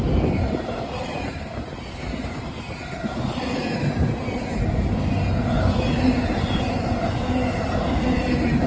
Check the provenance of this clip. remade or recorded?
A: recorded